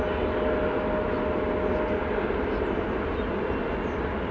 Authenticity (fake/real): real